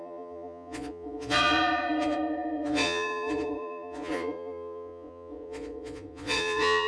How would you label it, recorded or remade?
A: remade